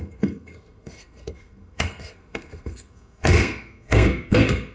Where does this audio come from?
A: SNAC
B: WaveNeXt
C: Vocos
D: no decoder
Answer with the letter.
A